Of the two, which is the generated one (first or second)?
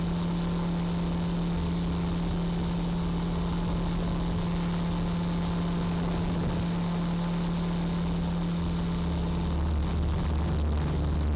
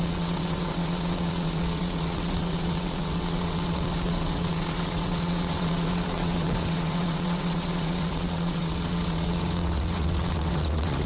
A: second